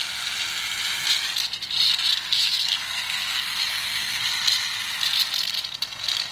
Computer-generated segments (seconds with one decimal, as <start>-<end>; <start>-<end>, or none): 2.1-4.2